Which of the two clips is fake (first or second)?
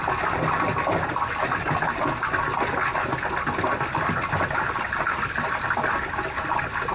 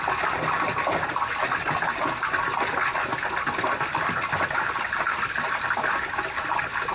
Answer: second